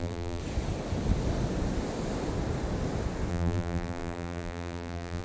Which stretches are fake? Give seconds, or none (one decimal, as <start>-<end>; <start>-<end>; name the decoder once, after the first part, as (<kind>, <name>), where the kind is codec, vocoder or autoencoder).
0.0-0.4 (vocoder, BigVGAN v2); 3.3-5.2